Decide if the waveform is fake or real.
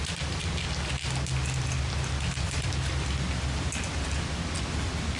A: real